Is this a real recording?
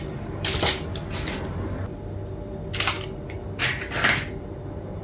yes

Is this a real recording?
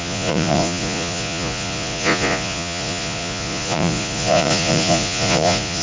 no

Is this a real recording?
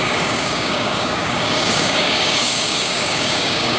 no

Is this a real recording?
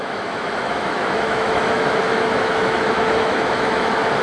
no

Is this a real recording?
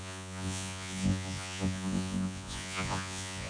no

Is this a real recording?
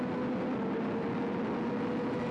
yes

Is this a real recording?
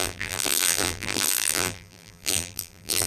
no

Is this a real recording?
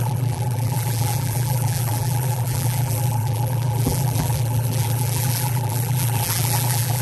no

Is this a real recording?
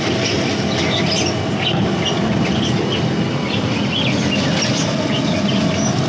yes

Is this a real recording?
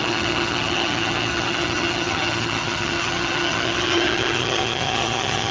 no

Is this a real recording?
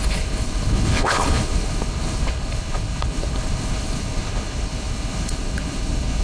no